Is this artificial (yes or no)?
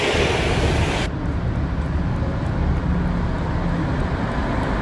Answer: no